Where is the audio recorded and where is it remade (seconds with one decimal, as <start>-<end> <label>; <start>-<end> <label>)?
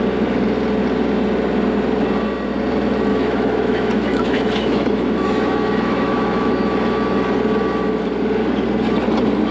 0.0-3.1 recorded; 3.1-6.5 remade; 6.5-9.5 recorded